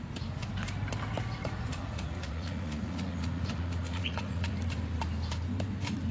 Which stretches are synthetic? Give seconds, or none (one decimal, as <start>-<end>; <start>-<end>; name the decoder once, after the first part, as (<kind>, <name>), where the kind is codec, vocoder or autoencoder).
1.4-4.5 (vocoder, Vocos)